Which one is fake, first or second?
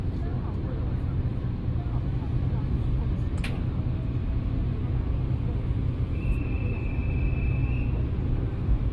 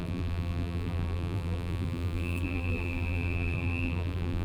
second